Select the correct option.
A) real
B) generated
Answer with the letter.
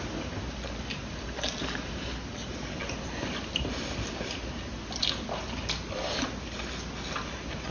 A